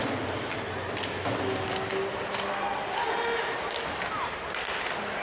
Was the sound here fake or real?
real